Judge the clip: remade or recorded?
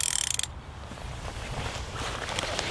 recorded